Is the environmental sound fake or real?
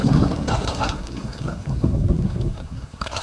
fake